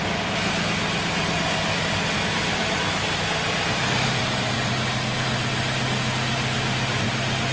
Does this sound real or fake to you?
real